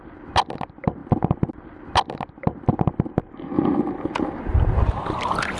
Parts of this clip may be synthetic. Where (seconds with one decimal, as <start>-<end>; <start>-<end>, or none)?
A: none